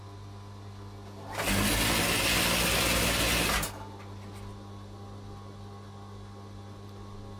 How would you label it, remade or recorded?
recorded